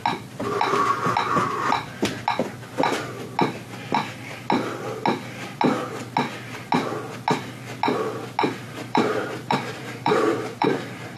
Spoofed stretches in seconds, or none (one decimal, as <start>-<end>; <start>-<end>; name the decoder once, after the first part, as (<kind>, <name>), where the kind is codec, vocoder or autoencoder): 8.6-11.2 (vocoder, BigVGAN v2)